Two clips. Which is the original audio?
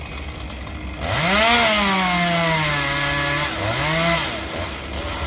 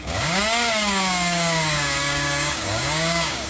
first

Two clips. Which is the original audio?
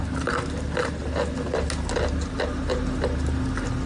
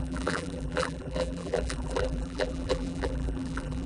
first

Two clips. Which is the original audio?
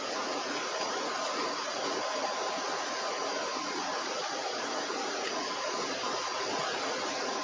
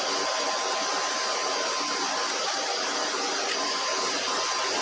second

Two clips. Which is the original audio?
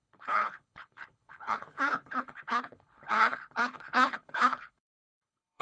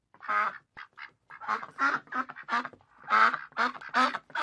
second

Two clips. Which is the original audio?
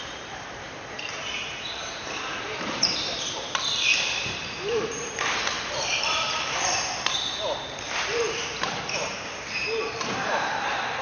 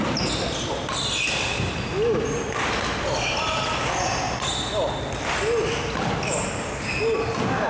second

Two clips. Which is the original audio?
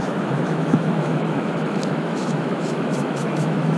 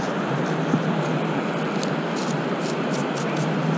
second